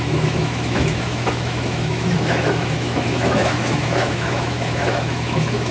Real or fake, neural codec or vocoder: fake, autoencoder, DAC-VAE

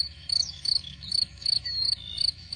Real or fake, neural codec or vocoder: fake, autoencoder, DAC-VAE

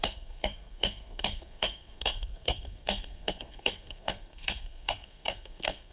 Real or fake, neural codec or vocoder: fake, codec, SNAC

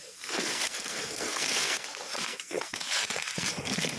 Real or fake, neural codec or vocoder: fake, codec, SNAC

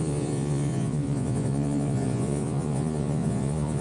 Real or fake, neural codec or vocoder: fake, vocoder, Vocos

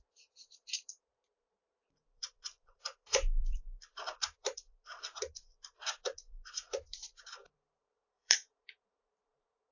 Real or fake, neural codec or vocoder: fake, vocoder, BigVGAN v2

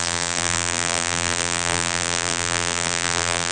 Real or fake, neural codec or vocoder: fake, vocoder, BigVGAN v2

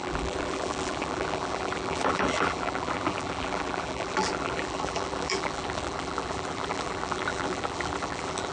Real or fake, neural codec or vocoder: fake, vocoder, BigVGAN v2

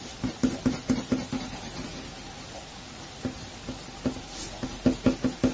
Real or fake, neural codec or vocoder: real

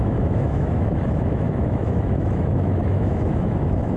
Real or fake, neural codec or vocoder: fake, autoencoder, DAC-VAE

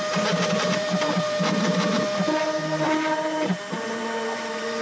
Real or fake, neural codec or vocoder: fake, vocoder, BigVGAN v2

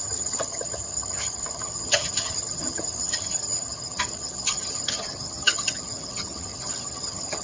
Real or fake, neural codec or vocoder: fake, vocoder, HiFi-GAN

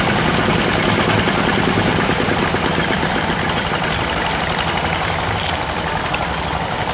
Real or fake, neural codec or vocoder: real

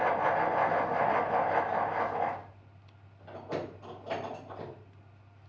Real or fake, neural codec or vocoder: real